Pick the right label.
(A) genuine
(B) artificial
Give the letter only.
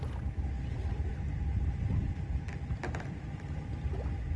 A